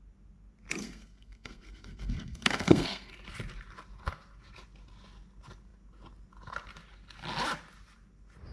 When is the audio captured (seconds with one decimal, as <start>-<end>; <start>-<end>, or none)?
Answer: 0.0-0.8; 3.1-8.5